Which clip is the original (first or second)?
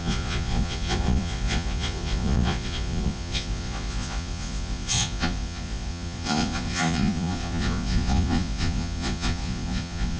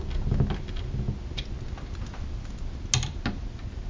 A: second